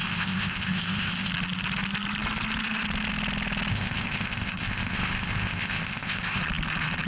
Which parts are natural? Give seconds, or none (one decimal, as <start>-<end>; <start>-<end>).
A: 1.3-3.7; 6.4-7.1